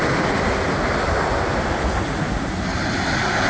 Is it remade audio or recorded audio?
recorded